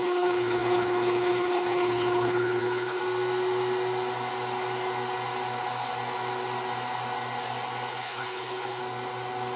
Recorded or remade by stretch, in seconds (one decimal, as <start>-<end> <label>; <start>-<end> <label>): 0.0-3.0 remade; 3.0-7.9 recorded; 7.9-8.8 remade; 8.8-9.6 recorded